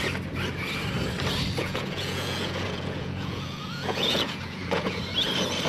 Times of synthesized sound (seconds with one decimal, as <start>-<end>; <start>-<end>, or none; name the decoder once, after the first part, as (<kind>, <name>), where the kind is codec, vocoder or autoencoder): 1.6-5.0 (vocoder, Vocos)